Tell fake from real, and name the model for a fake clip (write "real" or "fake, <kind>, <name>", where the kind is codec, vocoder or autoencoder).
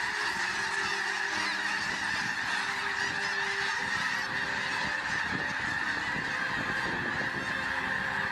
real